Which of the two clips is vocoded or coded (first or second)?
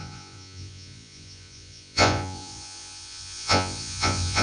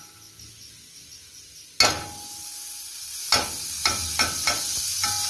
first